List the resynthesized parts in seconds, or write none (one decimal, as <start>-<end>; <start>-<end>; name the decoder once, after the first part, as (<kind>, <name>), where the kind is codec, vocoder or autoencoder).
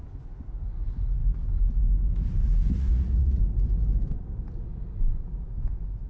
2.7-3.4 (vocoder, Vocos)